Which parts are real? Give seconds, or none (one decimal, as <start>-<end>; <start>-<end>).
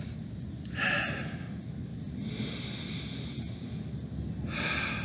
0.0-5.0